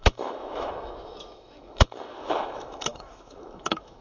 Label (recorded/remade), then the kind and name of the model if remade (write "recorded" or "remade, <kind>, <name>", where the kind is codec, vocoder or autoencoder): remade, autoencoder, DAC-VAE